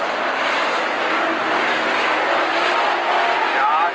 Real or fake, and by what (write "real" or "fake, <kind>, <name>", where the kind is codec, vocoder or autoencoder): real